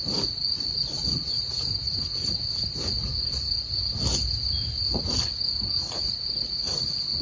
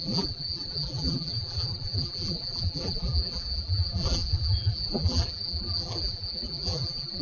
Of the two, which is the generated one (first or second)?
second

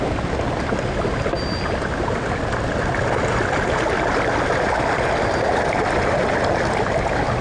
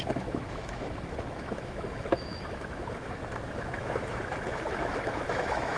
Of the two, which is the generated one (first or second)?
second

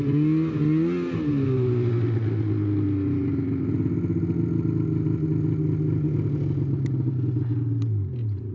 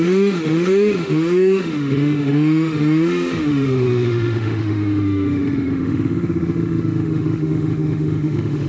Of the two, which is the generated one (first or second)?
second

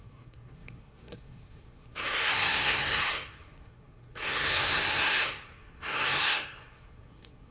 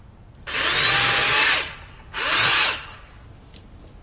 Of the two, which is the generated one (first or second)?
first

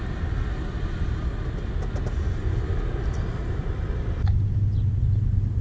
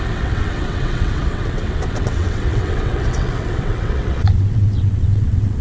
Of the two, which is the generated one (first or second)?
second